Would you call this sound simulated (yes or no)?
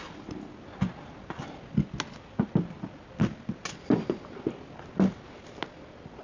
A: no